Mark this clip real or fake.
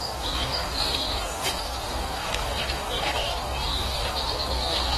fake